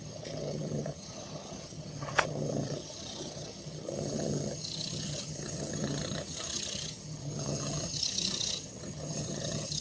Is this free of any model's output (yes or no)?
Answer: no